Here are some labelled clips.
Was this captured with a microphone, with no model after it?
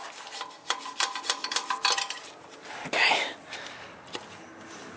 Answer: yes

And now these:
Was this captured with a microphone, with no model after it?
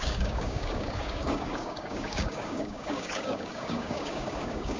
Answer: no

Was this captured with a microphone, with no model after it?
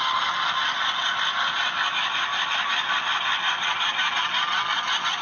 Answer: yes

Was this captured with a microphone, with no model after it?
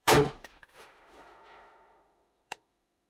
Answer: no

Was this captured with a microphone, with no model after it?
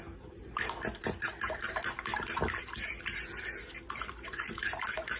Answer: yes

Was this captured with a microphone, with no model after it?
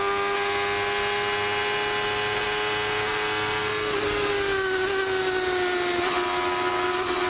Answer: yes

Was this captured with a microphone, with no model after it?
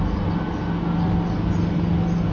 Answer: yes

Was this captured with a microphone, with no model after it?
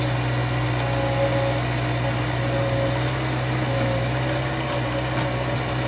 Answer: yes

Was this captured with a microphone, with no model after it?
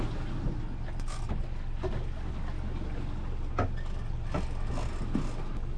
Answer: yes